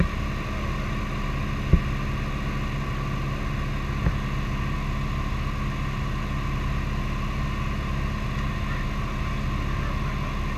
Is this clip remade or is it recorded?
recorded